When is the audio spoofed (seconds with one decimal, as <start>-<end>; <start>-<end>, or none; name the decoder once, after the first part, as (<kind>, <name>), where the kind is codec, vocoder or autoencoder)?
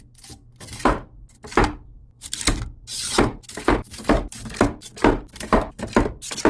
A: 0.4-1.3 (vocoder, BigVGAN v2); 2.0-5.8